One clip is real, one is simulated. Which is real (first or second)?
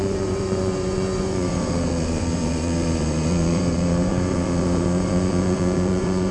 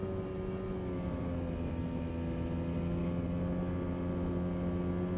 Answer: second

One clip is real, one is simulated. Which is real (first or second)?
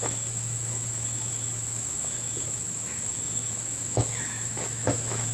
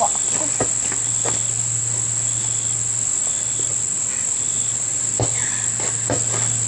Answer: second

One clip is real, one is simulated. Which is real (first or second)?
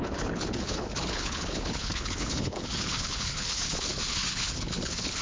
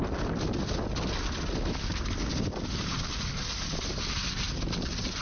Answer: second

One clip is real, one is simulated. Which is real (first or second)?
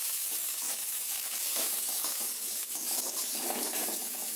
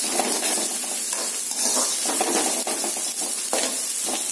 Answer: second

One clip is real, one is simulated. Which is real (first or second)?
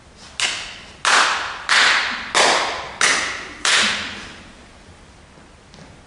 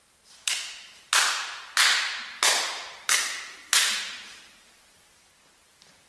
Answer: first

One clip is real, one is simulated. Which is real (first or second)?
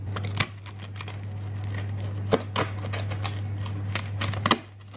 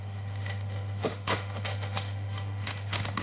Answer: first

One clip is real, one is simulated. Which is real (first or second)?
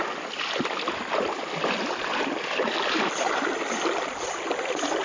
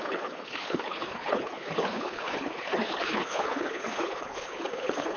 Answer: first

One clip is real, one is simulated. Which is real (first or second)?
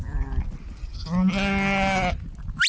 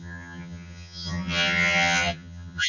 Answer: first